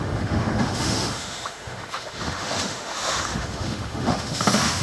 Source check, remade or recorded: remade